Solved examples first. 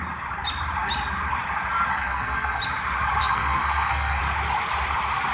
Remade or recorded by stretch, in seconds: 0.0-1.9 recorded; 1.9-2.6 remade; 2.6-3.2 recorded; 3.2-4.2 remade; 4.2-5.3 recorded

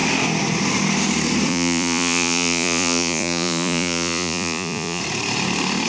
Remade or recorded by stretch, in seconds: 0.0-1.5 recorded; 1.5-5.0 remade; 5.0-5.9 recorded

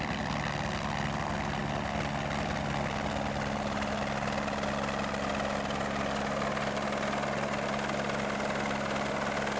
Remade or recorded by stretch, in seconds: 0.0-9.6 recorded

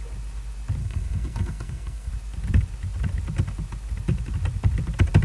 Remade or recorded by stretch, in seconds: 0.0-0.8 recorded; 0.8-2.1 remade; 2.1-5.2 recorded

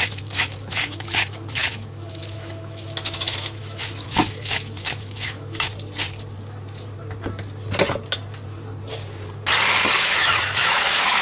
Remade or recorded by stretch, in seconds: 0.0-5.7 remade; 5.7-10.0 recorded; 10.0-11.2 remade

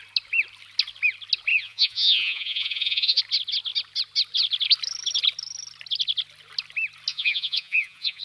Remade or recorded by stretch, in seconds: 0.0-1.5 recorded; 1.5-3.2 remade; 3.2-7.1 recorded; 7.1-8.2 remade